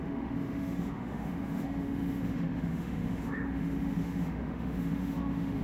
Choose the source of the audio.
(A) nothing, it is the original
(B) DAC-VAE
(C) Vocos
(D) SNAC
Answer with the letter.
B